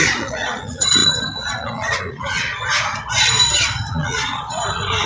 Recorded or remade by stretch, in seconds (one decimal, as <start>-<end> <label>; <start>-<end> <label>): 0.0-2.5 remade; 2.5-3.9 recorded; 3.9-5.1 remade

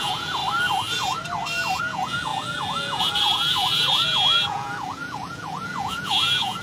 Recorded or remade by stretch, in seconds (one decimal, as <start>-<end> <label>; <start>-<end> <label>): 0.0-0.4 remade; 0.4-1.8 recorded; 1.8-6.6 remade

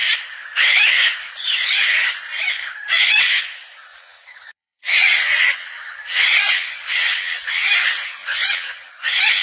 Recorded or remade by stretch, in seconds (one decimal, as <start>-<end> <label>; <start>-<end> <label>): 0.0-3.9 recorded; 3.9-7.6 remade; 7.6-8.2 recorded; 8.2-8.9 remade; 8.9-9.4 recorded

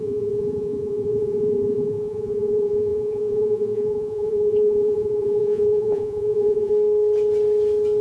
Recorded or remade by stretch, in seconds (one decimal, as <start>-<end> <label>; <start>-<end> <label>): 0.0-6.7 remade; 6.7-8.0 recorded